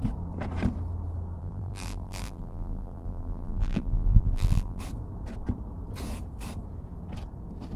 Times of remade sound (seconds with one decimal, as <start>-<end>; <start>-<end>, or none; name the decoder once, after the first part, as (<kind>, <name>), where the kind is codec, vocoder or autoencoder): 1.4-4.8 (vocoder, BigVGAN v2)